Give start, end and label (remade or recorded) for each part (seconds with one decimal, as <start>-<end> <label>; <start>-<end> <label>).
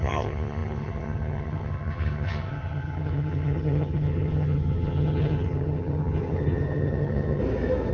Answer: 0.0-7.4 remade; 7.4-7.9 recorded